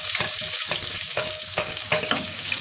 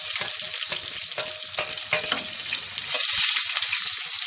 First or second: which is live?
second